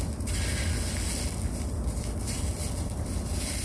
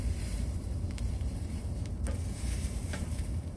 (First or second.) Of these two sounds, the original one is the first